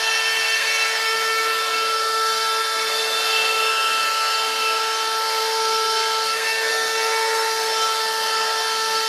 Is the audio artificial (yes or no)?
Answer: yes